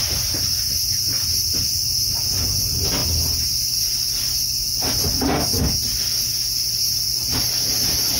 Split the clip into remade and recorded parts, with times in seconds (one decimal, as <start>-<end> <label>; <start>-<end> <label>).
0.0-0.7 remade; 0.7-8.2 recorded